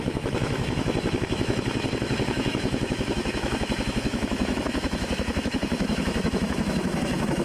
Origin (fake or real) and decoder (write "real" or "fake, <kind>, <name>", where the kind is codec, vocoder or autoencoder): fake, autoencoder, DAC-VAE